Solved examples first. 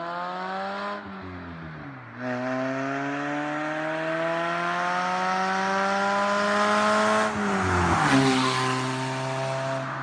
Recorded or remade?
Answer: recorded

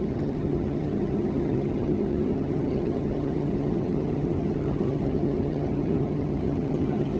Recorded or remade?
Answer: remade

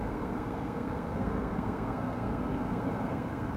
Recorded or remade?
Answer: remade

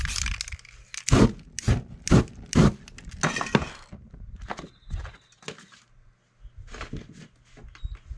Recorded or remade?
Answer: recorded